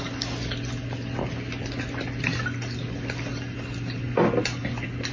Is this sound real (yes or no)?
yes